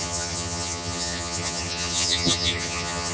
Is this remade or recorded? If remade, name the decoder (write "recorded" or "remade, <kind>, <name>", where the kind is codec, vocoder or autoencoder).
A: remade, vocoder, HiFi-GAN